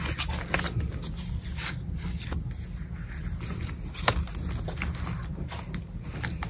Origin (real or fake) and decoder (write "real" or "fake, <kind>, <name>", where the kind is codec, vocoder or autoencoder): real